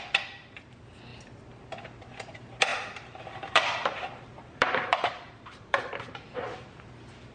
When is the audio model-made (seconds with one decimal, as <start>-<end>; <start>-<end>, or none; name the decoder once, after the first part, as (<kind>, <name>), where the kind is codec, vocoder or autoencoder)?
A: 2.7-6.4 (vocoder, BigVGAN v2)

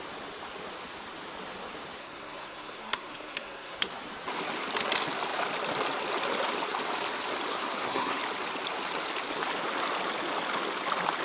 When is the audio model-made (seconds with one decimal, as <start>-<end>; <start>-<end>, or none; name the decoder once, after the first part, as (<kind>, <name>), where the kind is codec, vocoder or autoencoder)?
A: 2.0-3.8 (codec, SNAC); 7.5-8.2

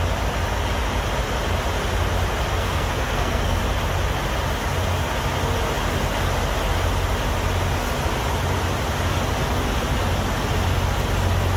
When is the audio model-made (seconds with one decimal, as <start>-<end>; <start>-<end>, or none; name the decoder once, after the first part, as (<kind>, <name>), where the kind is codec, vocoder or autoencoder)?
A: 2.5-3.6 (codec, SNAC)

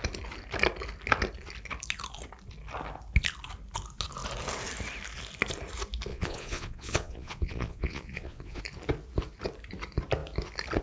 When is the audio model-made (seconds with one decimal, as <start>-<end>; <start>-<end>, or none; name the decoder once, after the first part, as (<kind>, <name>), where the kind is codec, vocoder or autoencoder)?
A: 6.1-8.6 (vocoder, Vocos)

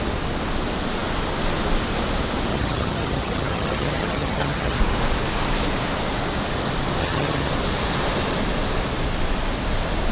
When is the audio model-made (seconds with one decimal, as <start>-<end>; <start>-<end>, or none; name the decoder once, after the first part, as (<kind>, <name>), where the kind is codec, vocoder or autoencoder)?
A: 2.5-4.8 (vocoder, HiFi-GAN); 7.0-7.5

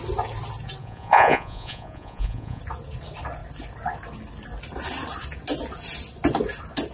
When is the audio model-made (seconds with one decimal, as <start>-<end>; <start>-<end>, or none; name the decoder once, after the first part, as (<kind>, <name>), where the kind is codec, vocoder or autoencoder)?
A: 0.8-2.6 (vocoder, Vocos)